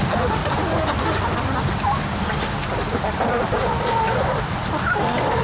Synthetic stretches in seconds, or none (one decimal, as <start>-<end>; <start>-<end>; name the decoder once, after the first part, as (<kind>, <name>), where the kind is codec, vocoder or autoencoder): 0.4-1.0 (vocoder, BigVGAN v2); 2.9-3.6